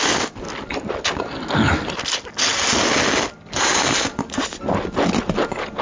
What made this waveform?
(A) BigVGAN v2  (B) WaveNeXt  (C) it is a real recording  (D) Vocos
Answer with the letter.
C